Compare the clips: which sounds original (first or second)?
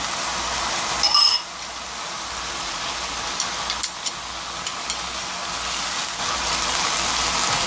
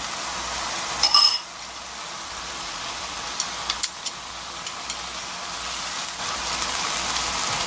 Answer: first